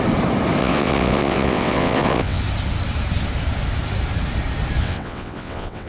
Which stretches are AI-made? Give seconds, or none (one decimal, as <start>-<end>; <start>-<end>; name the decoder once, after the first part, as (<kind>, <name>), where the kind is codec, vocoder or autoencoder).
0.6-2.4 (vocoder, WaveNeXt); 4.8-5.9